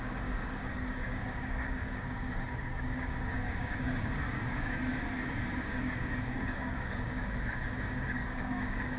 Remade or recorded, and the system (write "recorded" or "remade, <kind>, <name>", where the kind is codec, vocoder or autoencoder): remade, codec, DAC